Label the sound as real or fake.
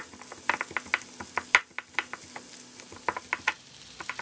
real